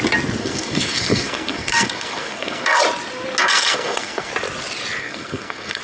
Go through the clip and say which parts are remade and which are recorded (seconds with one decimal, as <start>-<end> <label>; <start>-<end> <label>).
0.0-0.4 recorded; 0.4-2.8 remade; 2.8-3.4 recorded; 3.4-4.3 remade; 4.3-5.0 recorded; 5.0-5.8 remade